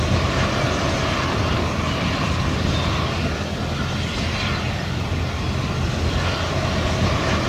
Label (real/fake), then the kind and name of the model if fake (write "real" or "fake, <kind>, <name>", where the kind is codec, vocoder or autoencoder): real